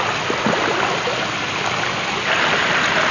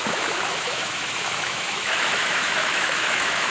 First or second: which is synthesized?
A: second